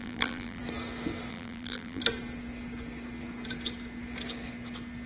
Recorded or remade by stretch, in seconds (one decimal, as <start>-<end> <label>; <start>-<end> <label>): 0.0-0.6 remade; 0.6-1.3 recorded; 1.3-2.0 remade; 2.0-5.1 recorded

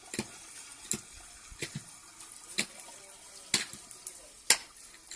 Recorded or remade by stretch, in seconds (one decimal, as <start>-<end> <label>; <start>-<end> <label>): 0.0-5.2 recorded

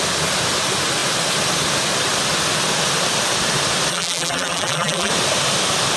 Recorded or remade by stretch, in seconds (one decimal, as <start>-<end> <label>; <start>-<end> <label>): 0.0-3.9 recorded; 3.9-5.1 remade; 5.1-6.0 recorded

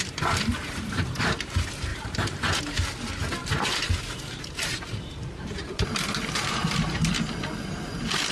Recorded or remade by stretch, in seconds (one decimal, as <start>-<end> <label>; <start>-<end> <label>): 0.0-0.6 recorded; 0.6-1.2 remade; 1.2-1.9 recorded; 1.9-2.6 remade; 2.6-3.4 recorded; 3.4-7.1 remade; 7.1-8.3 recorded

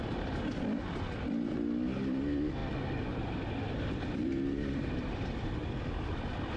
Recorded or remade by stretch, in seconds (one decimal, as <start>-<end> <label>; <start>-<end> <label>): 0.0-2.6 recorded; 2.6-6.6 remade

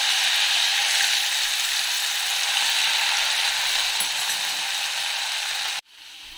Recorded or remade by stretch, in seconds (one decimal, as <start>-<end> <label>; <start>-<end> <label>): 0.0-0.7 recorded; 0.7-1.2 remade; 1.2-6.4 recorded

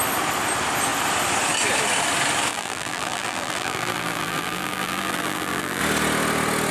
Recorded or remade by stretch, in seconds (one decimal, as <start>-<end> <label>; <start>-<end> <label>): 0.0-2.5 recorded; 2.5-5.8 remade; 5.8-6.7 recorded

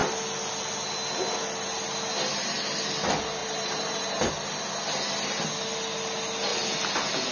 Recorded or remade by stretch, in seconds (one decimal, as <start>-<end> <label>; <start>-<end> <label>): 0.0-3.4 recorded; 3.4-4.3 remade; 4.3-7.3 recorded